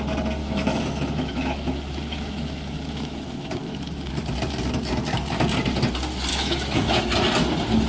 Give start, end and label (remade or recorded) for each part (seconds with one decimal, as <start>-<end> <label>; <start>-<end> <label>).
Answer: 0.0-0.4 recorded; 0.4-4.1 remade; 4.1-6.3 recorded; 6.3-7.0 remade; 7.0-7.9 recorded